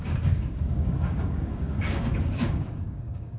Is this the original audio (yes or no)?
no